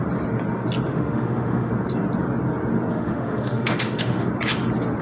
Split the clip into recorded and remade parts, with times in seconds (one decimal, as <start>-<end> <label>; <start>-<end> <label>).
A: 0.0-0.9 recorded; 0.9-1.7 remade; 1.7-2.9 recorded; 2.9-4.3 remade; 4.3-5.0 recorded